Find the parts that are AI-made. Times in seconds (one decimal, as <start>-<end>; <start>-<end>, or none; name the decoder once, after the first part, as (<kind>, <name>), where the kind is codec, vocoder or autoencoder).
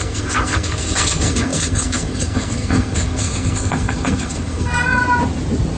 0.0-5.0 (codec, SNAC)